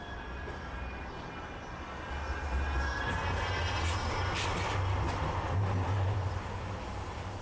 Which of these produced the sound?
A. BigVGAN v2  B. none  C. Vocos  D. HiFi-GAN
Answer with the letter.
B